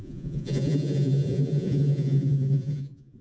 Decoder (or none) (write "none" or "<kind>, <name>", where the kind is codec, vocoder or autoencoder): vocoder, Vocos